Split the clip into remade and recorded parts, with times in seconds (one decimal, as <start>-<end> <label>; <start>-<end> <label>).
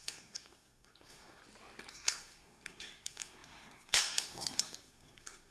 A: 0.0-1.4 remade; 1.4-1.9 recorded; 1.9-5.5 remade